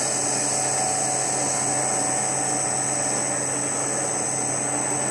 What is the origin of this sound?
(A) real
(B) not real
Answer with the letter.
A